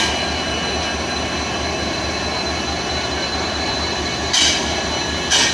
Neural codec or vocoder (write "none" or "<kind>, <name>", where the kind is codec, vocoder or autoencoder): none